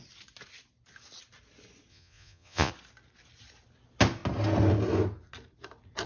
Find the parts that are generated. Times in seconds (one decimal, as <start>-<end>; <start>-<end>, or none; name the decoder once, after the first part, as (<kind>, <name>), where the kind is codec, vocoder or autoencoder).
1.9-2.7 (vocoder, Vocos)